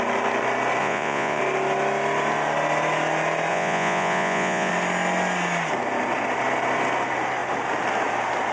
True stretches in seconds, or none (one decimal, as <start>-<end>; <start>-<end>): 0.0-0.8; 1.4-3.5; 4.7-8.5